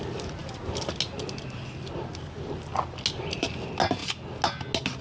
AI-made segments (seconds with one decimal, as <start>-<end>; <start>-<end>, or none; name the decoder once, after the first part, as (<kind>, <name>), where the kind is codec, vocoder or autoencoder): none